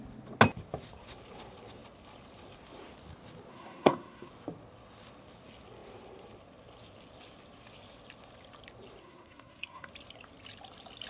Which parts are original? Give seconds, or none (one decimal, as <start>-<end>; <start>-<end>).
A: 0.0-3.5; 4.3-9.0; 9.9-11.1

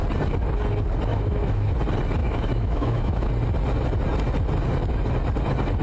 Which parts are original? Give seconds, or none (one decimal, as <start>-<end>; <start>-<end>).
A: 0.0-1.1; 1.7-2.2; 3.3-5.8

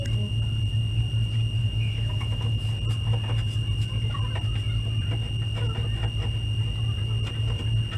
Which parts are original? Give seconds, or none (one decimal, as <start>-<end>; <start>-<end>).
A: 0.0-1.6; 2.7-8.0

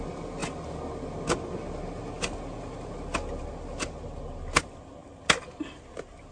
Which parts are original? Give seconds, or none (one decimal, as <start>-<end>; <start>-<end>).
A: 0.0-6.3

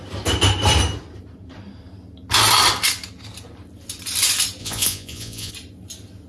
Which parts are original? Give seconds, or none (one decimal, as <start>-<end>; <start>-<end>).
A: 0.0-4.6; 5.5-6.3

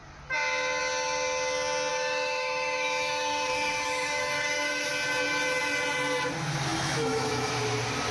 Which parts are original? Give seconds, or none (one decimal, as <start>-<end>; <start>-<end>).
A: 0.0-1.9; 4.9-6.7; 7.5-8.1

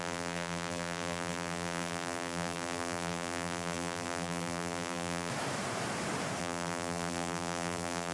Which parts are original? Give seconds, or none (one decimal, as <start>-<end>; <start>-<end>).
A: 5.3-6.4